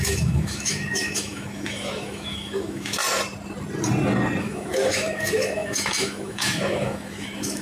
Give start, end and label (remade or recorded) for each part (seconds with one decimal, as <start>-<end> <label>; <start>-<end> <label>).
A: 0.0-3.0 remade; 3.0-4.4 recorded; 4.4-7.6 remade